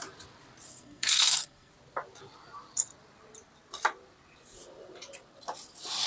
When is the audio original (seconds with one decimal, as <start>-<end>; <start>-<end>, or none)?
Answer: 0.0-0.7; 1.7-6.1